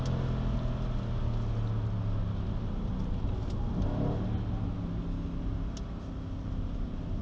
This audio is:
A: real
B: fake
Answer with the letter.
A